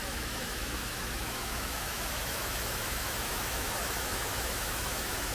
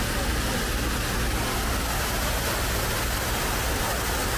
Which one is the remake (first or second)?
first